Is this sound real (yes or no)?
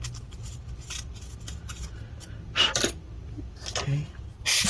yes